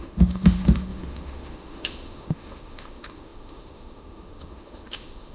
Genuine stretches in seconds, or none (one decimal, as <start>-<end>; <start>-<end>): none